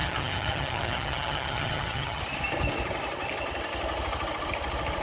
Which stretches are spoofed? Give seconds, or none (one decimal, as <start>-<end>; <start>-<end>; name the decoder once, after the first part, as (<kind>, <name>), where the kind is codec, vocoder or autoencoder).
0.0-2.2 (vocoder, HiFi-GAN)